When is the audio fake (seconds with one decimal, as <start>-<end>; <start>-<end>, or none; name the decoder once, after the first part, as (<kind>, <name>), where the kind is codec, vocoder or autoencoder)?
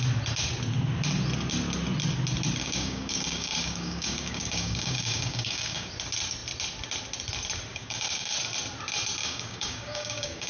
2.6-5.9 (codec, DAC); 7.7-8.3; 9.2-10.5